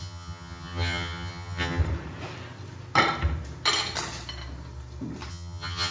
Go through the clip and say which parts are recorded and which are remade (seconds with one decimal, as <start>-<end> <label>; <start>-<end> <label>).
0.0-1.8 remade; 1.8-5.3 recorded; 5.3-5.9 remade